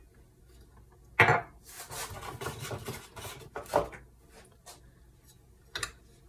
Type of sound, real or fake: real